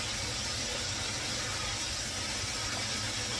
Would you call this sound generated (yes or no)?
no